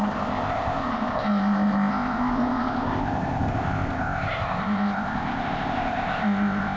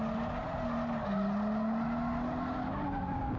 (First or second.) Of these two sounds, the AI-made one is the first